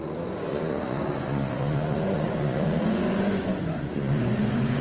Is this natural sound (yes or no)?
no